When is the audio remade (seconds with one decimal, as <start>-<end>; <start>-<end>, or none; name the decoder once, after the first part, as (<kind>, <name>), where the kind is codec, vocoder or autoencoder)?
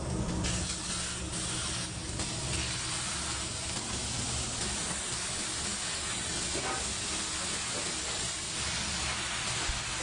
none